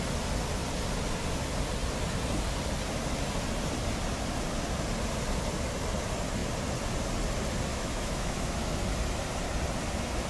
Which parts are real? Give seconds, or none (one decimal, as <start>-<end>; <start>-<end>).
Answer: 0.0-7.7; 8.8-10.3